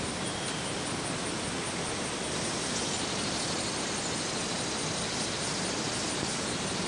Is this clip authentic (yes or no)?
yes